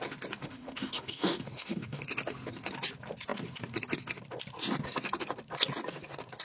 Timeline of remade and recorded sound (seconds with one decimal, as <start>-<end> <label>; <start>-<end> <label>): 0.0-0.4 recorded; 0.4-2.0 remade; 2.0-6.4 recorded